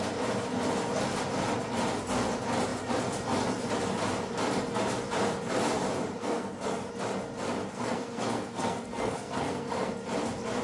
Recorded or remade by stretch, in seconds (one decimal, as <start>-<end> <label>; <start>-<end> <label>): 0.0-6.2 recorded; 6.2-6.9 remade; 6.9-7.6 recorded; 7.6-9.9 remade; 9.9-10.6 recorded